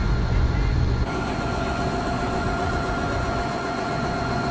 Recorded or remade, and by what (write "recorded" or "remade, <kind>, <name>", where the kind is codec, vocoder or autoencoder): remade, vocoder, Vocos